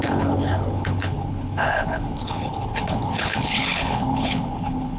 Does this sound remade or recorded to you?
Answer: remade